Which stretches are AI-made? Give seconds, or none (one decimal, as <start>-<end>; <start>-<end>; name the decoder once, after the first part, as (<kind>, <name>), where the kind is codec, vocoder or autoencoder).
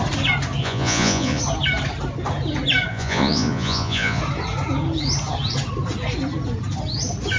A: 0.6-1.4 (vocoder, Vocos); 2.9-4.2